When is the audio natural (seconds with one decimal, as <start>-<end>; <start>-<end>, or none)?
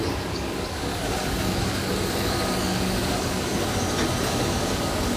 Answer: 3.5-4.2